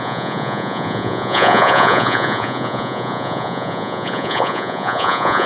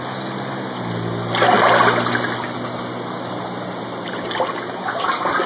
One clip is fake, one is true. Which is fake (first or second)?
first